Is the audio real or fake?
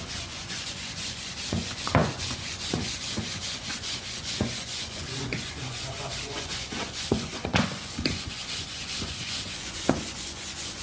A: fake